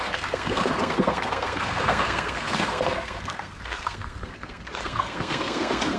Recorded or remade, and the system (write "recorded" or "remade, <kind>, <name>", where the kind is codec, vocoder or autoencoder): remade, codec, SNAC